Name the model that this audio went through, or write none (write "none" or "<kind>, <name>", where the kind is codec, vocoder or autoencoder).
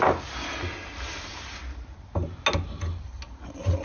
none